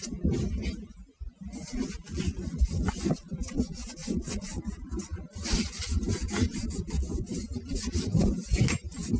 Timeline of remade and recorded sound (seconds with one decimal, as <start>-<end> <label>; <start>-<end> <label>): 0.0-2.1 recorded; 2.1-3.1 remade; 3.1-4.0 recorded; 4.0-4.6 remade; 4.6-9.2 recorded